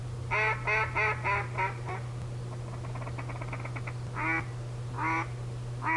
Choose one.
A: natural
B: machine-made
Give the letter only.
A